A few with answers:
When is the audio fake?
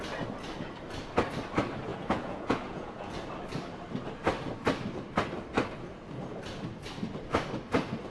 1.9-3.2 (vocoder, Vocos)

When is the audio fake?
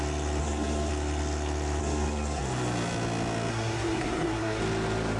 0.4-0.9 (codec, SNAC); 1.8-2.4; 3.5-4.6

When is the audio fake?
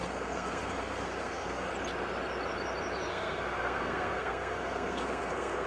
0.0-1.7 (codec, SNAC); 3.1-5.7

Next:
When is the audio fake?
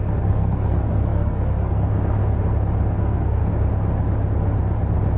0.0-2.2 (codec, SNAC); 3.0-3.4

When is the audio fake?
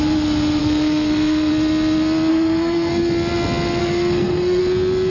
0.6-1.5 (codec, SNAC); 2.3-2.9; 3.8-4.6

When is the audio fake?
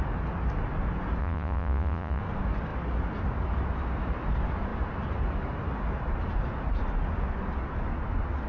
1.2-2.2 (vocoder, Vocos)